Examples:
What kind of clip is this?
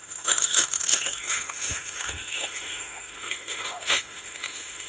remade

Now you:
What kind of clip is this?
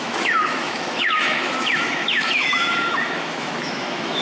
remade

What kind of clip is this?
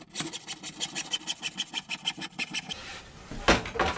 recorded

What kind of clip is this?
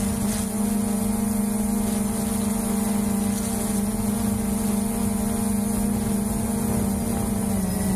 recorded